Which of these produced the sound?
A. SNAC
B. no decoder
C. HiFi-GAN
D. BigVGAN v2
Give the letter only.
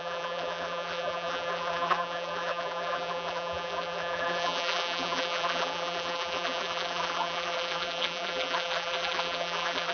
D